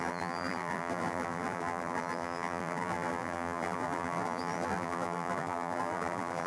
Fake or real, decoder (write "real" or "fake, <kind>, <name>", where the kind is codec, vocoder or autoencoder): fake, vocoder, BigVGAN v2